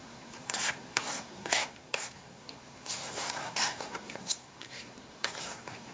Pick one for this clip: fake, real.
fake